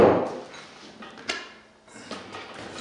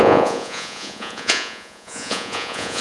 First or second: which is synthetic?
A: second